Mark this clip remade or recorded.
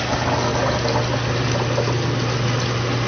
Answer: recorded